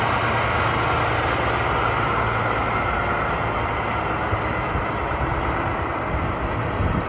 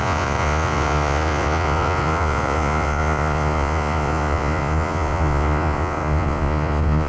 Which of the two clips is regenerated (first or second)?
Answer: second